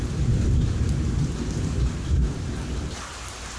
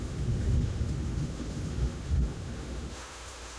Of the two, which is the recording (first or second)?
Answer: first